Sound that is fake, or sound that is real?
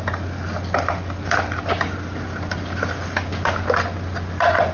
real